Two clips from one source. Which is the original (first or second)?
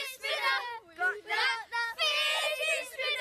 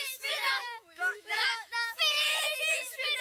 first